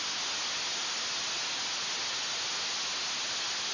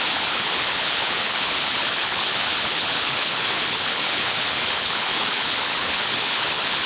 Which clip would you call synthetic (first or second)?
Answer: second